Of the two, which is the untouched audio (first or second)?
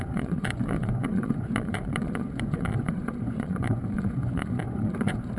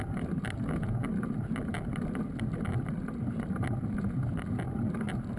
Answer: second